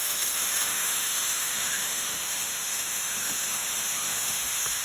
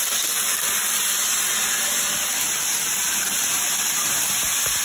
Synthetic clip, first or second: first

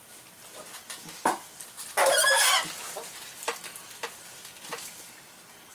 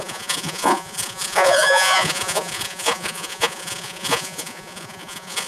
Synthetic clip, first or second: second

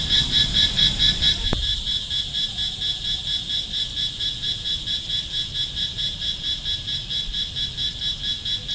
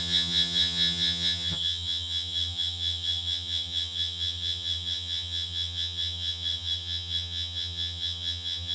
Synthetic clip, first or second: second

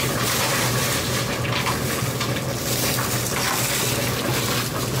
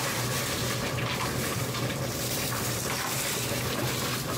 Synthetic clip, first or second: second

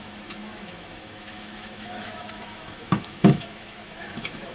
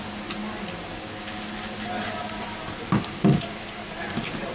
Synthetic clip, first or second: first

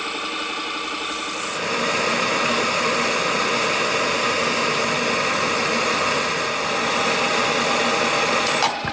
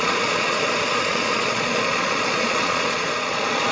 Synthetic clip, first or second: second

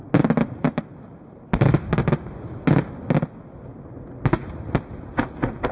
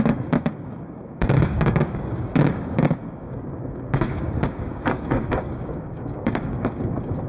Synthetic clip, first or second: second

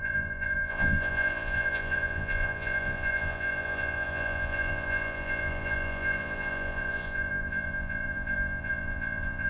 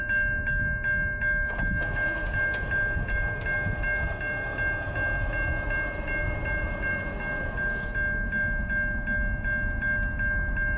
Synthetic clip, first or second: first